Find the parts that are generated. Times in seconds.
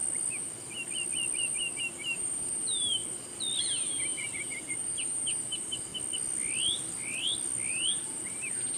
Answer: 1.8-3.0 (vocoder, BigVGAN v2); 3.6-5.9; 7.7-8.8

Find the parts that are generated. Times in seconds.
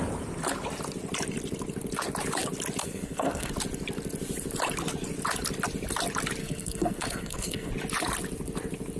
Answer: 2.8-3.5 (codec, SNAC); 6.4-7.7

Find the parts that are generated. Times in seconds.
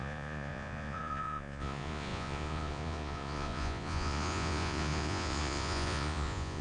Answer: 0.0-6.6 (vocoder, Vocos)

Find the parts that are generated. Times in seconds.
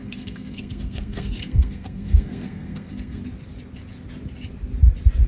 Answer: 0.0-3.2 (codec, SNAC)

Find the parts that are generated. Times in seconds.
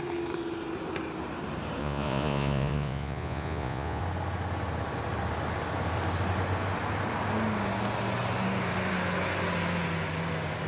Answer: 1.8-4.0 (vocoder, Vocos)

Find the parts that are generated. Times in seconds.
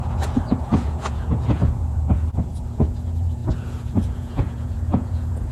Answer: 0.0-5.5 (vocoder, Vocos)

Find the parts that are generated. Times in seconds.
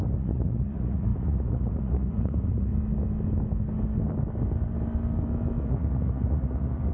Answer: 0.0-2.7 (vocoder, Vocos); 5.6-6.9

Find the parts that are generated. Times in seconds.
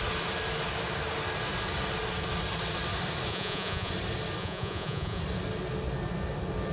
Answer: 3.3-3.9 (vocoder, Vocos); 4.4-5.2